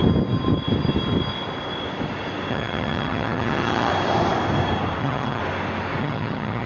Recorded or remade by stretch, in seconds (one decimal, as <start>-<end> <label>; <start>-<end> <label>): 0.0-2.5 recorded; 2.5-3.9 remade; 3.9-5.0 recorded; 5.0-5.4 remade; 5.4-6.0 recorded; 6.0-6.7 remade